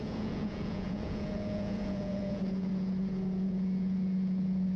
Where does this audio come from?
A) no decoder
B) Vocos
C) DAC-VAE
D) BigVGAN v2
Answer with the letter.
B